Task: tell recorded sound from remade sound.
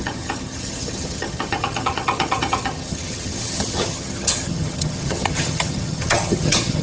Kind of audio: remade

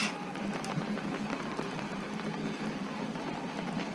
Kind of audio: recorded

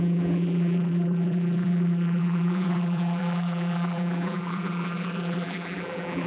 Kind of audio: remade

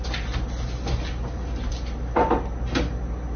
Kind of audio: recorded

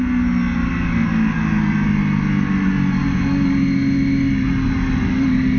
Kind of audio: recorded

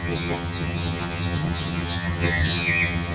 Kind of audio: remade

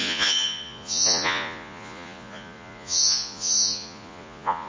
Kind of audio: remade